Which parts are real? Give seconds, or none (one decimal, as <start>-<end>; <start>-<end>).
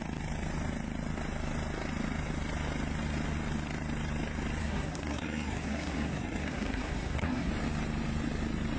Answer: 0.0-4.6; 7.5-8.8